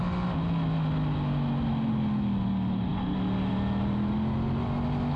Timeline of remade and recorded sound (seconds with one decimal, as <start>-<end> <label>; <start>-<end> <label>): 0.0-5.2 recorded